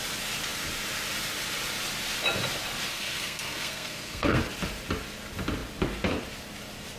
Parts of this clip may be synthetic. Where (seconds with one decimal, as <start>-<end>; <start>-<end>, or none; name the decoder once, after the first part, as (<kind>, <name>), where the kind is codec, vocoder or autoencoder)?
2.9-4.4 (codec, SNAC)